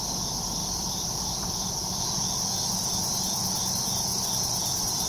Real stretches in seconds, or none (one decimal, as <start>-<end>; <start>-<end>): 0.0-0.6; 2.5-4.1